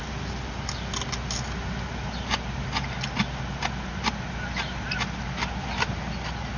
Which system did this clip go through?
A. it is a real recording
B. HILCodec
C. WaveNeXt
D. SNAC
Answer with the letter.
A